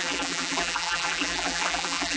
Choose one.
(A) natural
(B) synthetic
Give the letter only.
B